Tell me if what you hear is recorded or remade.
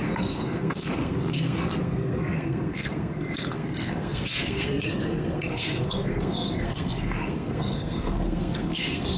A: remade